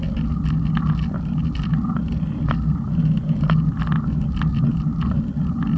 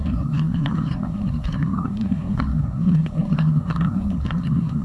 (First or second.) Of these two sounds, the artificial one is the second